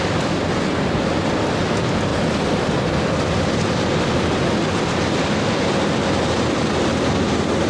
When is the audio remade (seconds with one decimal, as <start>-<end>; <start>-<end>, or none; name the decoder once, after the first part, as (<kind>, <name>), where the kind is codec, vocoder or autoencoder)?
none